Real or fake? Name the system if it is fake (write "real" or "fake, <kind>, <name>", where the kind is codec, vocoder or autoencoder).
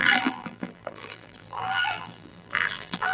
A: fake, vocoder, BigVGAN v2